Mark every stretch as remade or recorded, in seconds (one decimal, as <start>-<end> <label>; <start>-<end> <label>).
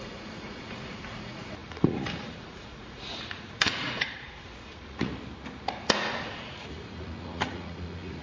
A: 0.0-5.1 remade; 5.1-5.8 recorded; 5.8-8.2 remade